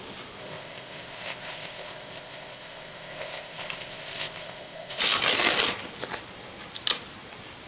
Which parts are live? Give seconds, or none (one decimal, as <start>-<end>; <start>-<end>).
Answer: 0.0-0.4; 5.0-7.7